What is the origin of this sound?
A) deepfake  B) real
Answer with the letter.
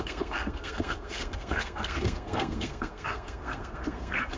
A